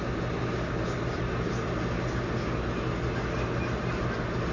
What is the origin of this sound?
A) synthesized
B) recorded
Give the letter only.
B